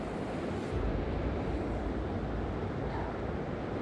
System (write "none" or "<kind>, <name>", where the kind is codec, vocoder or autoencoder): none